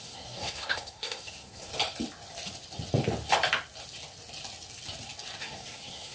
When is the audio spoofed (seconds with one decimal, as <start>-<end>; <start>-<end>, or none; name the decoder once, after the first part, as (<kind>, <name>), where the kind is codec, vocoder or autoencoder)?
0.0-1.7 (codec, SNAC); 5.4-6.1